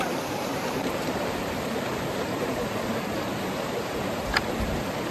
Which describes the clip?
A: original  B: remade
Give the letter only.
B